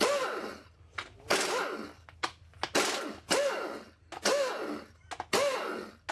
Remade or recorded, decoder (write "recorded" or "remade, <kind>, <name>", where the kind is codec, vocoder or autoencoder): recorded